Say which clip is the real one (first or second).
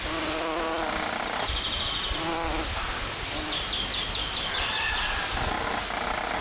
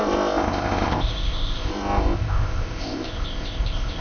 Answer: first